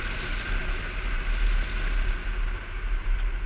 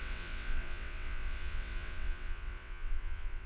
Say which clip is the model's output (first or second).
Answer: second